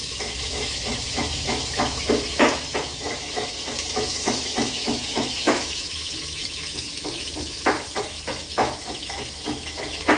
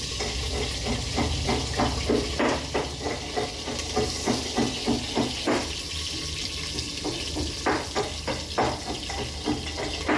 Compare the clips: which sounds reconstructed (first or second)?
first